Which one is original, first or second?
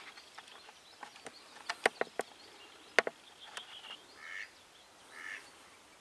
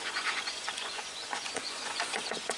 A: first